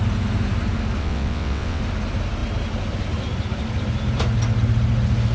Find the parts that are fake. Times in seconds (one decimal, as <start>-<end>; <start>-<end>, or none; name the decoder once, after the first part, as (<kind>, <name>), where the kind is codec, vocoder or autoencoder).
1.0-1.8 (vocoder, WaveNeXt)